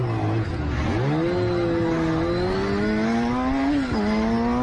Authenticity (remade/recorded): recorded